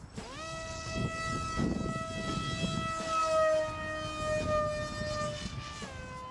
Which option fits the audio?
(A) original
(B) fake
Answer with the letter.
A